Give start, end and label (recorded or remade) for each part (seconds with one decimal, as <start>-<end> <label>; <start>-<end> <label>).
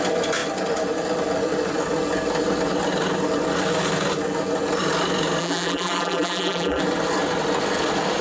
0.0-5.4 recorded; 5.4-6.8 remade; 6.8-8.2 recorded